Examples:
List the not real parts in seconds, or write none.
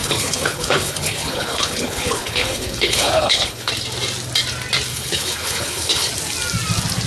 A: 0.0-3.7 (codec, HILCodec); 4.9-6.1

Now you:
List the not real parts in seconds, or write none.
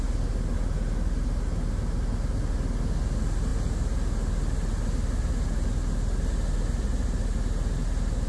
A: none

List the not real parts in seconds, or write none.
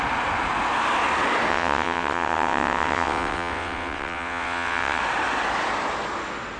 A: 1.5-5.0 (vocoder, WaveNeXt)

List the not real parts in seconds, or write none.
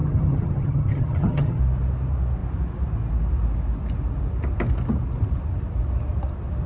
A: 0.0-1.6 (vocoder, HiFi-GAN)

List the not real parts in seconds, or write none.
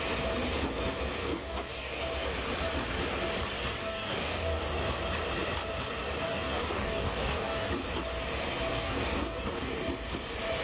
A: 1.2-2.0 (codec, DAC); 3.8-4.6; 6.3-7.7; 8.7-9.7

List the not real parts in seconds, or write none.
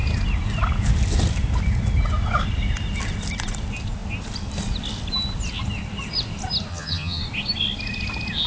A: 6.7-7.2 (vocoder, HiFi-GAN)